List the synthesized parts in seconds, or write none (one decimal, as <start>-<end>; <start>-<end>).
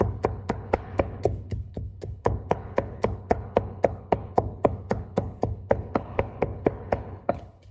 0.0-7.7